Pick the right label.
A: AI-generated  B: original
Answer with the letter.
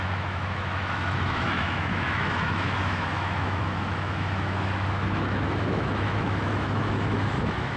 A